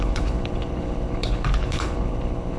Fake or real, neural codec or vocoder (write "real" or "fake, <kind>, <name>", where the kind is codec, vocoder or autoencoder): fake, codec, HILCodec